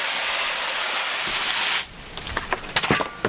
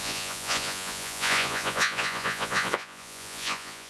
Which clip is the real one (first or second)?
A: first